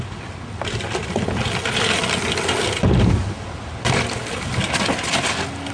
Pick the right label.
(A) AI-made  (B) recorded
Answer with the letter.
B